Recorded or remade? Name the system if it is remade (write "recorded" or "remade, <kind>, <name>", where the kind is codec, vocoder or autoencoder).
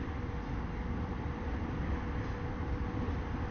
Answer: remade, vocoder, BigVGAN v2